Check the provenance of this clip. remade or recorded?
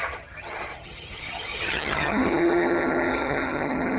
remade